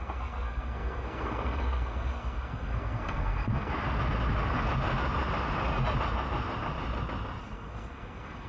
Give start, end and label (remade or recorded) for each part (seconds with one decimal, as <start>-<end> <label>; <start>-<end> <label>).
0.0-3.7 remade; 3.7-7.4 recorded; 7.4-8.5 remade

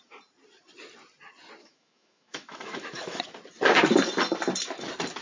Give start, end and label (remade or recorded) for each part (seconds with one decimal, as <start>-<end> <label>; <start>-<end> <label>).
0.0-1.6 recorded; 1.6-3.2 remade; 3.2-5.2 recorded

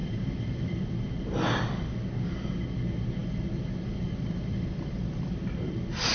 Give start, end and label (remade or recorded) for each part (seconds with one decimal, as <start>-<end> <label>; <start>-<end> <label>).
0.0-0.8 remade; 0.8-3.2 recorded; 3.2-5.3 remade; 5.3-6.1 recorded

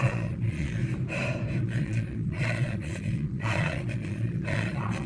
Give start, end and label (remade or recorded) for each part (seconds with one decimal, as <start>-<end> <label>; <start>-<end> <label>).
0.0-0.8 remade; 0.8-1.6 recorded; 1.6-5.1 remade

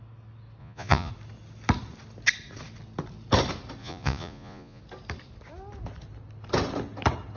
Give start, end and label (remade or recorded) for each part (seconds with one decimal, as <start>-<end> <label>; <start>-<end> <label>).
0.0-0.6 recorded; 0.6-1.1 remade; 1.1-3.8 recorded; 3.8-4.8 remade; 4.8-7.4 recorded

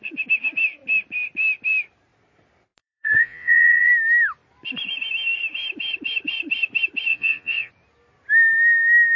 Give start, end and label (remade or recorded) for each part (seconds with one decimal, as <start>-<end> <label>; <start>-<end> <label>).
0.0-2.8 recorded; 2.8-3.9 remade; 3.9-7.1 recorded; 7.1-7.7 remade; 7.7-9.2 recorded

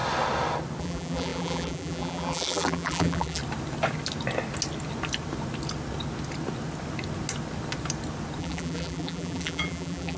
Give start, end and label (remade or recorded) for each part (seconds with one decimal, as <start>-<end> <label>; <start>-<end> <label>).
0.0-0.8 recorded; 0.8-3.4 remade; 3.4-8.4 recorded; 8.4-10.2 remade

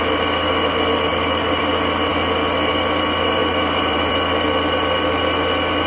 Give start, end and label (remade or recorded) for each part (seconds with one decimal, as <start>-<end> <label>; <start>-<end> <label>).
0.0-1.1 recorded; 1.1-1.6 remade; 1.6-3.4 recorded; 3.4-4.1 remade; 4.1-5.9 recorded